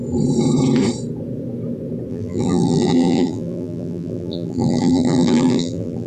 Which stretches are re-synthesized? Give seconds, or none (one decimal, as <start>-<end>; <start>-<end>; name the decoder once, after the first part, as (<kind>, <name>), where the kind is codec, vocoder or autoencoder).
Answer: 2.1-6.1 (vocoder, BigVGAN v2)